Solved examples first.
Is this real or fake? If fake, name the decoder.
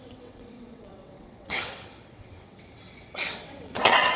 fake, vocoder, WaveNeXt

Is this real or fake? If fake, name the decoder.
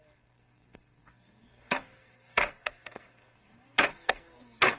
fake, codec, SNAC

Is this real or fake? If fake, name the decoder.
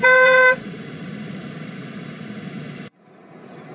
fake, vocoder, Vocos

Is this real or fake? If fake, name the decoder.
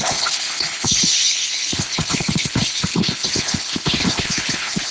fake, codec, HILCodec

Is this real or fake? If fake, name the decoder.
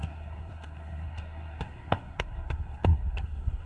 fake, codec, SNAC